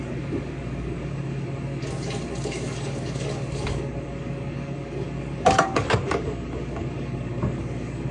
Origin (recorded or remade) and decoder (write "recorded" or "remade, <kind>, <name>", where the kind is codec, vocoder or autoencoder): remade, codec, DAC